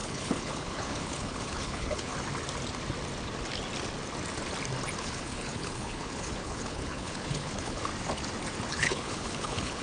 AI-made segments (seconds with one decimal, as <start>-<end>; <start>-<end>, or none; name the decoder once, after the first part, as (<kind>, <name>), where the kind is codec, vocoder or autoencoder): 0.0-2.1 (codec, HILCodec); 5.0-7.9; 8.7-9.8

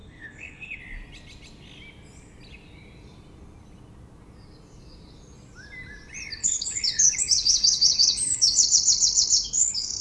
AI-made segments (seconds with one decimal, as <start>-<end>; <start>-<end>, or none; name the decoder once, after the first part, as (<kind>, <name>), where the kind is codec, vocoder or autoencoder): 0.0-0.8 (codec, HILCodec); 6.4-10.0